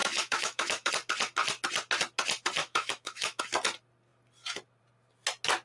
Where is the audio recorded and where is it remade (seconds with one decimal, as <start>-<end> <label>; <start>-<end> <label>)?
0.0-0.9 remade; 0.9-2.6 recorded; 2.6-3.4 remade; 3.4-5.6 recorded

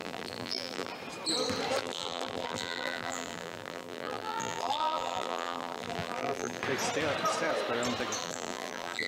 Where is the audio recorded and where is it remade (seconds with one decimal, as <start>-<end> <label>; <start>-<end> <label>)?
0.0-0.9 remade; 0.9-1.8 recorded; 1.8-6.6 remade; 6.6-8.2 recorded; 8.2-9.1 remade

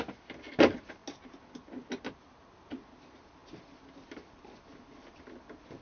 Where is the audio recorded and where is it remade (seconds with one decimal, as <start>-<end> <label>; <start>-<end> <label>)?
0.0-5.8 recorded